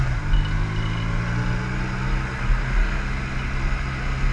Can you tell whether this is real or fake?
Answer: real